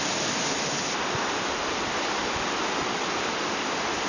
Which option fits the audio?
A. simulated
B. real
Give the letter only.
B